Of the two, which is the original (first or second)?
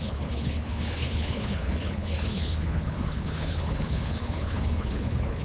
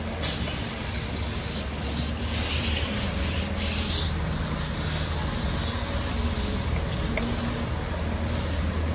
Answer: second